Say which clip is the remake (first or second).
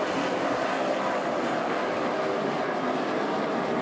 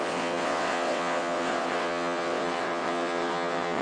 second